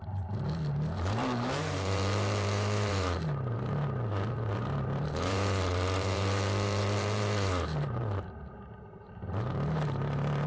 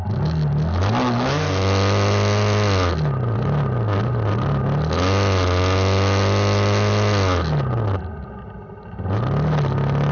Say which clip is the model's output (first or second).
first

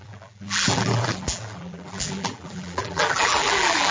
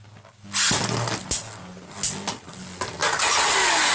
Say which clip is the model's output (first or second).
first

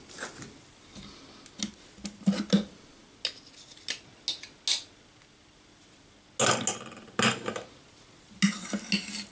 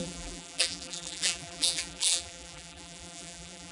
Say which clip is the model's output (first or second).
second